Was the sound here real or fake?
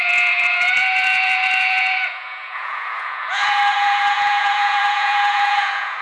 fake